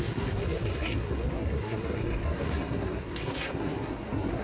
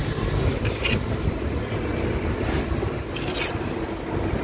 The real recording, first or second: second